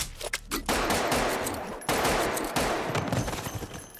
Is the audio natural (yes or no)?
yes